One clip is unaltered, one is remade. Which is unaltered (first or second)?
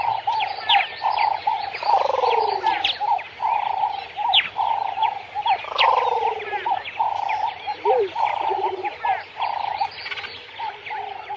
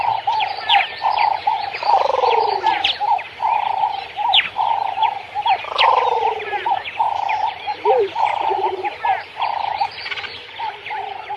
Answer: first